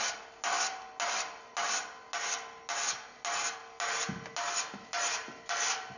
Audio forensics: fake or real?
real